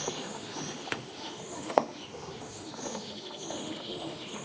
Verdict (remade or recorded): remade